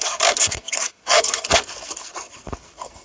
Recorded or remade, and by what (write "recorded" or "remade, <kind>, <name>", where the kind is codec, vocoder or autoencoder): remade, codec, SNAC